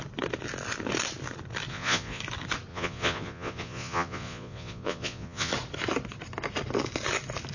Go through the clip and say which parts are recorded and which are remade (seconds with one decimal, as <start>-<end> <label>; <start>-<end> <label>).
0.0-1.7 recorded; 1.7-2.2 remade; 2.2-2.7 recorded; 2.7-5.5 remade; 5.5-7.5 recorded

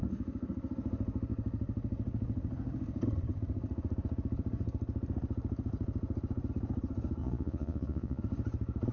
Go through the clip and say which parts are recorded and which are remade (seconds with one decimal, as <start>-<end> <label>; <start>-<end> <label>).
0.0-7.2 recorded; 7.2-8.2 remade; 8.2-8.9 recorded